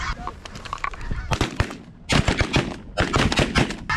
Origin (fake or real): real